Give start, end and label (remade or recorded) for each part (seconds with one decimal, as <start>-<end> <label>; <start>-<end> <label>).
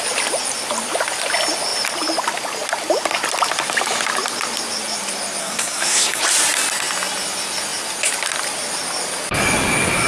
0.0-5.4 recorded; 5.4-6.2 remade; 6.2-10.1 recorded